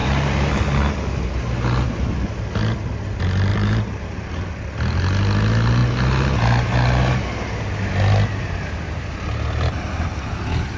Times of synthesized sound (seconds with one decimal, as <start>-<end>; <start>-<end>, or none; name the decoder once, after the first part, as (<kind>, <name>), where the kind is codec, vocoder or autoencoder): 0.0-0.5 (vocoder, BigVGAN v2); 3.5-4.5